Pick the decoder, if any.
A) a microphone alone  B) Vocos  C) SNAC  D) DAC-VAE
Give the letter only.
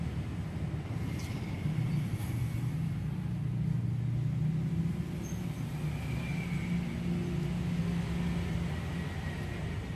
A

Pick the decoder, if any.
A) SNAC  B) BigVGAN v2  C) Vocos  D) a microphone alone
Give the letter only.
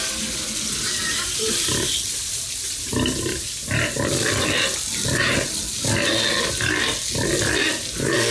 D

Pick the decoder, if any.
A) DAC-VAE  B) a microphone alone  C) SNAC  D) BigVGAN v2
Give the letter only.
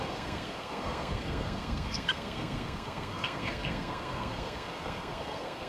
C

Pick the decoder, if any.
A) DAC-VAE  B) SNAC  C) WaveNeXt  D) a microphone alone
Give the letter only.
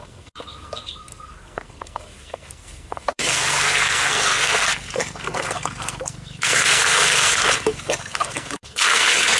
B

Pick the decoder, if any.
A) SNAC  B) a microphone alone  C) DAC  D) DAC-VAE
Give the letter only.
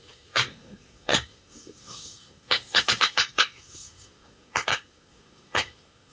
A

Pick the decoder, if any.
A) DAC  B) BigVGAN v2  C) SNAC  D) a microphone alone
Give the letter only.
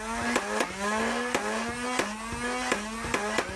D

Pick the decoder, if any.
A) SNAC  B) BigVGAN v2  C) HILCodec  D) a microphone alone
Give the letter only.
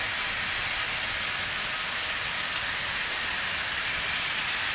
D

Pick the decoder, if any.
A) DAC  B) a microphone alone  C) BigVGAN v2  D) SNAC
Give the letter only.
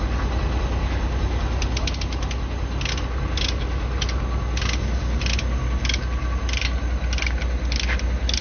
B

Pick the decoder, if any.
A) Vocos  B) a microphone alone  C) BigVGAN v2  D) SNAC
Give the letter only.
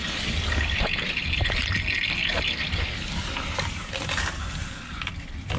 B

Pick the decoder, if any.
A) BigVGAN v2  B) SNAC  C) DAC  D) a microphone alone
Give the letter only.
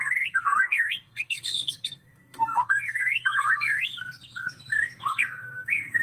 B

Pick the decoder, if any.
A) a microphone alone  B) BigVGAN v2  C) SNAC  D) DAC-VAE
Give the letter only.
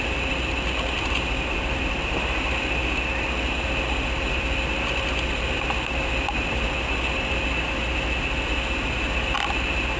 A